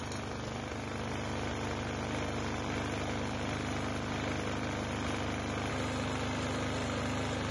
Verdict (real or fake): real